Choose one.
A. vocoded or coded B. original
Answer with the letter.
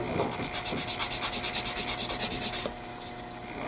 B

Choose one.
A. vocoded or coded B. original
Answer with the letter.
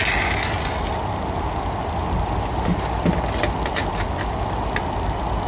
B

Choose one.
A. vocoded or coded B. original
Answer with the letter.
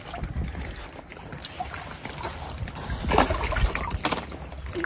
B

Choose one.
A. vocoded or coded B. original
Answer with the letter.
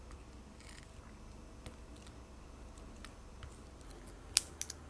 B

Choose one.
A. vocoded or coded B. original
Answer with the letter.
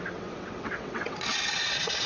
A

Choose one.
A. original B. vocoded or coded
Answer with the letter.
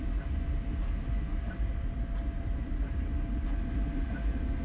A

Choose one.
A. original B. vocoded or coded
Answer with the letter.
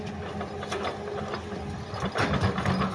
A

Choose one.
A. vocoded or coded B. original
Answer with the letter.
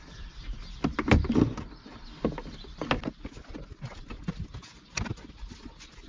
B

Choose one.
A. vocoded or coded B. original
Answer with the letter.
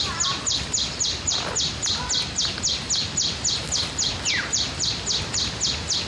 B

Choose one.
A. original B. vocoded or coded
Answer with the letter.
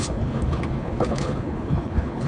B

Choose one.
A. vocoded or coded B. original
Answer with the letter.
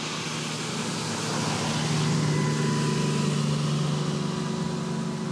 B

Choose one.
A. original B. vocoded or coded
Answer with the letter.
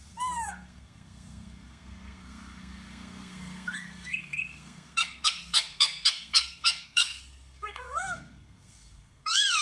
B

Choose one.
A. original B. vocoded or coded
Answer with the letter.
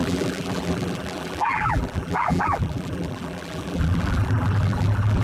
B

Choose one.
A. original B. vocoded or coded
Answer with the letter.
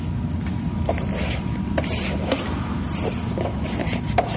A